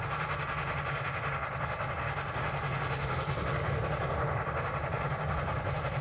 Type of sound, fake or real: real